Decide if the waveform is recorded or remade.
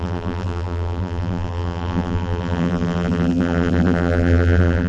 remade